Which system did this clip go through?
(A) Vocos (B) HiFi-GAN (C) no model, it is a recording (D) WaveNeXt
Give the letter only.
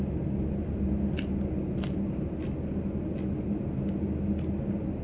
C